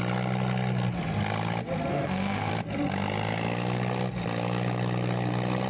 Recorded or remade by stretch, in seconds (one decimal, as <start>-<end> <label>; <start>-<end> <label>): 0.0-1.9 recorded; 1.9-2.5 remade; 2.5-5.7 recorded